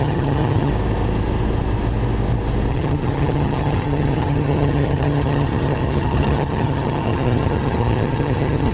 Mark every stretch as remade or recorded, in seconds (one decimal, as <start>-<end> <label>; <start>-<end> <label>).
0.0-0.7 remade; 0.7-2.7 recorded; 2.7-8.7 remade